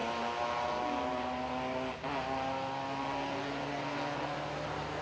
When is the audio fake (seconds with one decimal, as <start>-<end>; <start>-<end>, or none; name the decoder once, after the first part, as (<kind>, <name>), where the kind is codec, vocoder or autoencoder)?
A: none